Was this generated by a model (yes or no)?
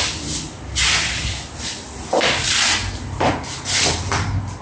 no